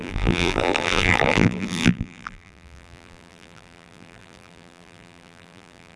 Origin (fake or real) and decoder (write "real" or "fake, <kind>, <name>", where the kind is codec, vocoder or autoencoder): fake, vocoder, BigVGAN v2